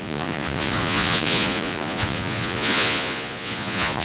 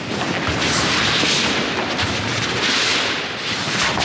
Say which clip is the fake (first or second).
first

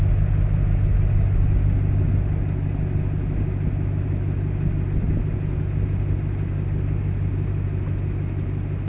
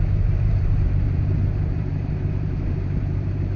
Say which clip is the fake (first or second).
second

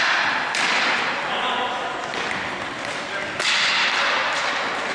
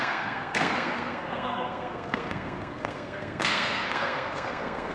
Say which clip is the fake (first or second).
second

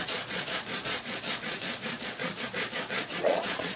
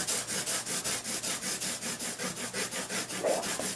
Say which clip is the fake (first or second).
first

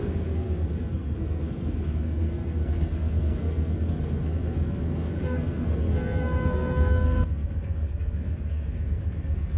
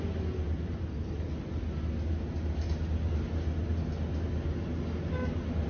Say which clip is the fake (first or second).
first